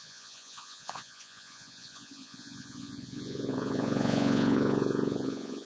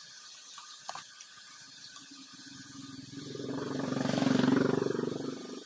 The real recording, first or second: second